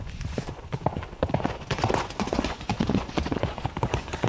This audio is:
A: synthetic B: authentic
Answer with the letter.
A